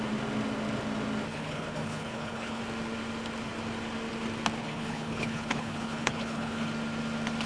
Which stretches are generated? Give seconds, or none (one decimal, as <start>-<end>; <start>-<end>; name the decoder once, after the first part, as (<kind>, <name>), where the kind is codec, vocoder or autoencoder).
1.3-2.6 (codec, HILCodec); 4.6-6.7

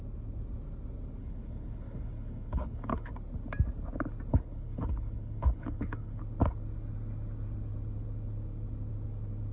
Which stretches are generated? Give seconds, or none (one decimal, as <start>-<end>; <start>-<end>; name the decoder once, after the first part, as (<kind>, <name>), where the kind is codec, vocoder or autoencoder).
1.2-3.1 (codec, HILCodec); 4.3-6.2

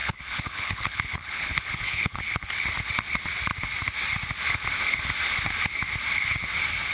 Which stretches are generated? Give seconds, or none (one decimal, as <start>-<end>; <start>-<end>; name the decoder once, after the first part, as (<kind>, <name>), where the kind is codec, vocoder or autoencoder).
0.0-2.5 (codec, HILCodec)

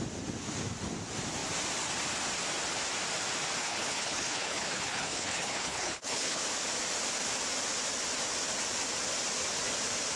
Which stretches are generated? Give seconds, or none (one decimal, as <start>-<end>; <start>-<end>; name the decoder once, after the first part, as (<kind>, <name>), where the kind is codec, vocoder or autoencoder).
3.6-6.4 (codec, HILCodec)